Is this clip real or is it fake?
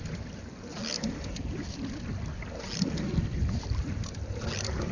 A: real